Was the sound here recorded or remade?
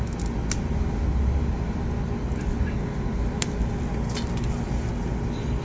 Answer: recorded